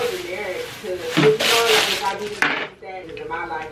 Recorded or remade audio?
recorded